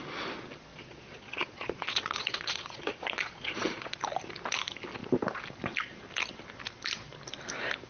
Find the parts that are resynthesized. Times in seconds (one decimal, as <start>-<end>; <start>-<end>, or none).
0.7-4.0